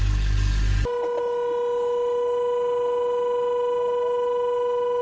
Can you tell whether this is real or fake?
real